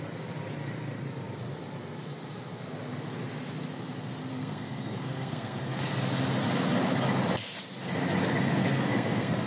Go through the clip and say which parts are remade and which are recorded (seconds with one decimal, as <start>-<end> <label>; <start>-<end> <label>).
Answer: 0.0-4.3 recorded; 4.3-5.9 remade; 5.9-8.6 recorded; 8.6-9.5 remade